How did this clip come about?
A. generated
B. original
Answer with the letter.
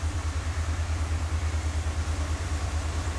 A